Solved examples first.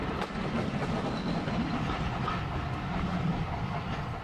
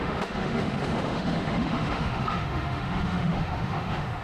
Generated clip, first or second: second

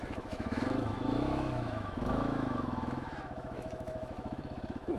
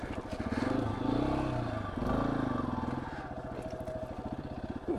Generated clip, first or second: first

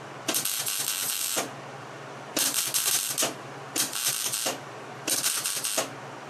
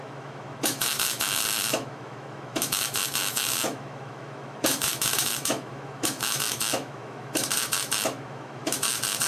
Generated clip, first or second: second